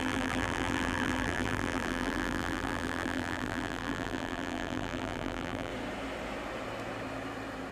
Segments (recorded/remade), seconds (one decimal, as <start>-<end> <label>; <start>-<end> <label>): 0.0-5.7 remade; 5.7-7.7 recorded